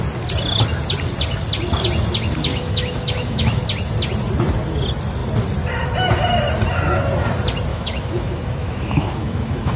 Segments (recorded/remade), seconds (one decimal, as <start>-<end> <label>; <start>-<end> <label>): 0.0-2.5 recorded; 2.5-3.6 remade; 3.6-7.7 recorded; 7.7-9.8 remade

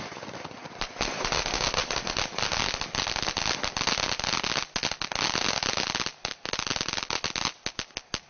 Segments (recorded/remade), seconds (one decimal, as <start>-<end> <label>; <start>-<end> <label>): 0.0-8.3 recorded